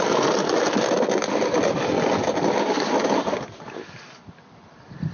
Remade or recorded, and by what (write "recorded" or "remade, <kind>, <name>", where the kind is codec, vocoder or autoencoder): recorded